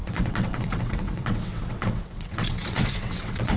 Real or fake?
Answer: fake